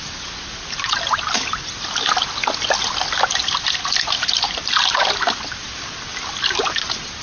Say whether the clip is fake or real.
real